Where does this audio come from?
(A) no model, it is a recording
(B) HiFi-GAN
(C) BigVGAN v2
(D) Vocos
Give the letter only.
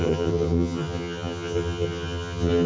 B